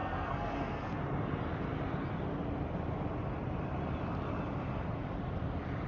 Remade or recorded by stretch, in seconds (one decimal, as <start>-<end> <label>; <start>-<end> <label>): 0.0-1.0 remade; 1.0-5.9 recorded